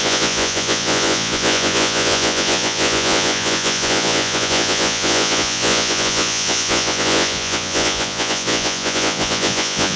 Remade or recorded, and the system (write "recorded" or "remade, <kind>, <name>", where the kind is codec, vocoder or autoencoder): remade, vocoder, Vocos